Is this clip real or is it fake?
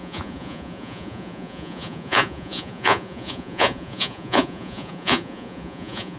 fake